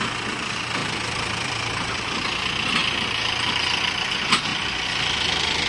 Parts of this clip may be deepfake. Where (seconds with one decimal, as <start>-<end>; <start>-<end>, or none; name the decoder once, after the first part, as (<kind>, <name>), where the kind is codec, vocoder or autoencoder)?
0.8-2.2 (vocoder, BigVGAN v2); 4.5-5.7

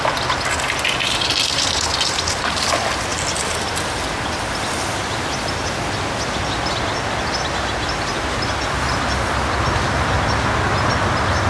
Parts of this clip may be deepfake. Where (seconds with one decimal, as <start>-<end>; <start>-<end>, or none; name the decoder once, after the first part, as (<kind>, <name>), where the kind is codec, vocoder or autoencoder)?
none

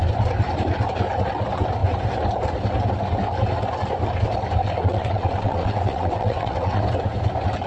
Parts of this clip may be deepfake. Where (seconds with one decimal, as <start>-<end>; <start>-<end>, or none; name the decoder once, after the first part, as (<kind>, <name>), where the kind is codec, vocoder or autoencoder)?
4.6-6.8 (vocoder, WaveNeXt)